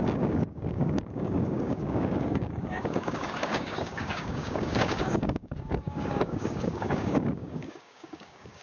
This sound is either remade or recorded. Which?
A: remade